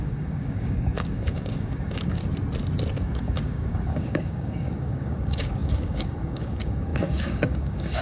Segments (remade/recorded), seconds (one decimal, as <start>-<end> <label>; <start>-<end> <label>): 0.0-2.2 remade; 2.2-2.9 recorded; 2.9-8.0 remade